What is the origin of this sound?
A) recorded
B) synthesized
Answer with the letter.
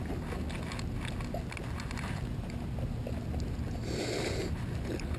A